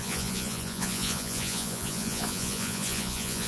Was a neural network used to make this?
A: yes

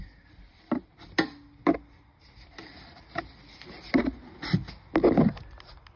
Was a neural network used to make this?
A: no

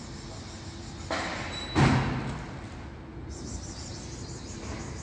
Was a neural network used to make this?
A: no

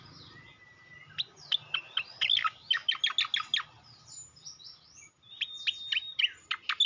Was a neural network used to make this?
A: no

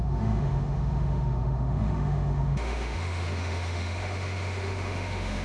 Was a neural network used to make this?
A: yes